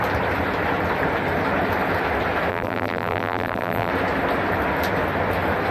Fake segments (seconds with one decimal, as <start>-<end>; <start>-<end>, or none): 2.5-3.9